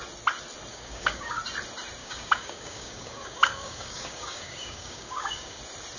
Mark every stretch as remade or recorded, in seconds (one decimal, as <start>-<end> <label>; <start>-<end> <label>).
0.0-0.7 recorded; 0.7-1.4 remade; 1.4-2.0 recorded; 2.0-5.6 remade; 5.6-6.0 recorded